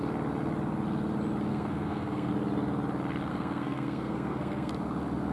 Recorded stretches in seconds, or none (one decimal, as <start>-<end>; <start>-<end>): 0.0-1.5; 2.3-3.3; 4.7-5.3